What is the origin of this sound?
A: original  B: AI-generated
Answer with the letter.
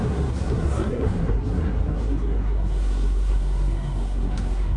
B